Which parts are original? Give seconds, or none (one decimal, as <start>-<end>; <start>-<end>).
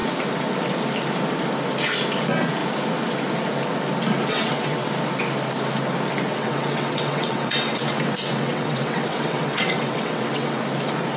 0.0-4.3; 4.9-6.3; 10.6-11.2